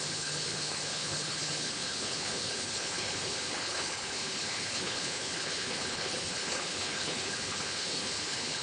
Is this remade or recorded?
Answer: remade